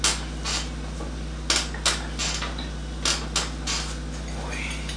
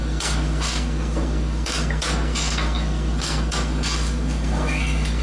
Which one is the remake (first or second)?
second